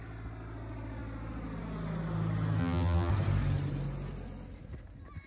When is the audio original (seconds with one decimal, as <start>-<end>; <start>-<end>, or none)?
0.0-2.6; 3.1-5.3